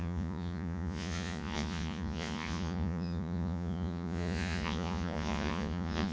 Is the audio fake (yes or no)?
yes